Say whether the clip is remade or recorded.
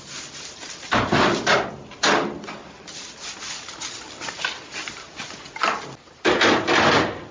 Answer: recorded